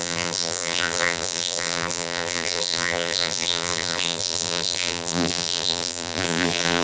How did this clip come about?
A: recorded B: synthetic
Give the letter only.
B